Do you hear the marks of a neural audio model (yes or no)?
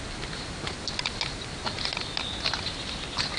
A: no